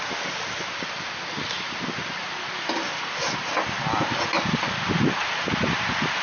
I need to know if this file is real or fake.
real